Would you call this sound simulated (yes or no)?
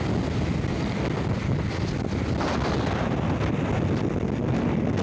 no